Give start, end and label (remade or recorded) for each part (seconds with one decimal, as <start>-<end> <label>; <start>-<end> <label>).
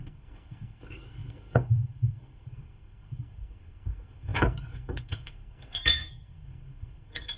0.0-7.4 remade